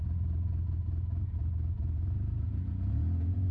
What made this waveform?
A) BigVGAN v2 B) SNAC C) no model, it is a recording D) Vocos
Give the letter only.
D